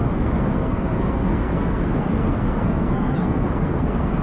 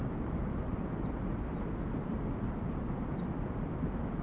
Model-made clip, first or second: first